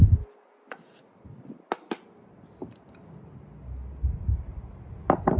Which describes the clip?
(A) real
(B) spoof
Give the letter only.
A